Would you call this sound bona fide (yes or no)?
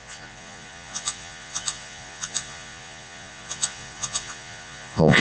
no